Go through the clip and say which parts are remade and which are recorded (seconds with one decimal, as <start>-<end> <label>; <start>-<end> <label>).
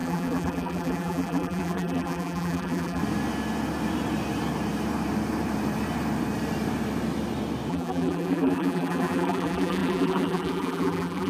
0.0-3.0 remade; 3.0-7.7 recorded; 7.7-11.3 remade